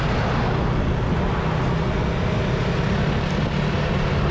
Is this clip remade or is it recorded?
recorded